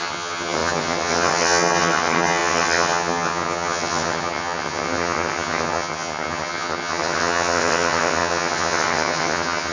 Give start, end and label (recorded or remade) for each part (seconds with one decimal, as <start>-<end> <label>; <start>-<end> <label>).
0.0-9.7 remade